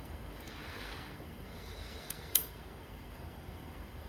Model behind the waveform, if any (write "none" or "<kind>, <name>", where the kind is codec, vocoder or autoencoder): codec, SNAC